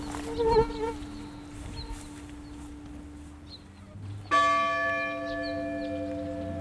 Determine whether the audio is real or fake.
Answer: real